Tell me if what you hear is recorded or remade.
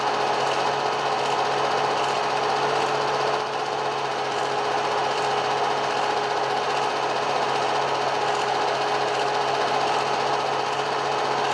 recorded